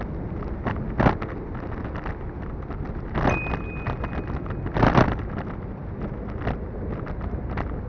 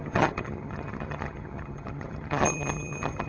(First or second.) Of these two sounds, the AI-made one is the second